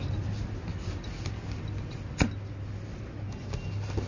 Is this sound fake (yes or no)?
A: no